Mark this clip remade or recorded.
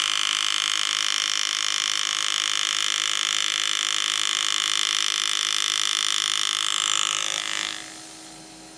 recorded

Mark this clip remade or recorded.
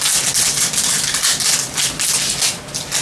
recorded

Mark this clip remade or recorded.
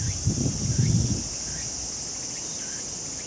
recorded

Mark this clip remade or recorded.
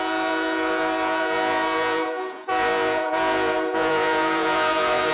remade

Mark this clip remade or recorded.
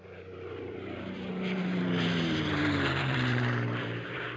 remade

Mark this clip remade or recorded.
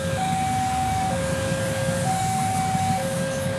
remade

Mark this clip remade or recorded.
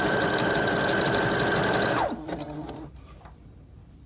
recorded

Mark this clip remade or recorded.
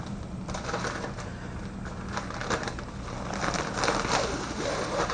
recorded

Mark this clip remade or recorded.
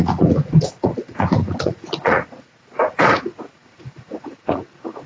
remade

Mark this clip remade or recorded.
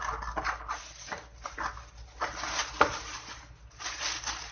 recorded